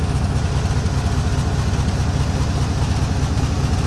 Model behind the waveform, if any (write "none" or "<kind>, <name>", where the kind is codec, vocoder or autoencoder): none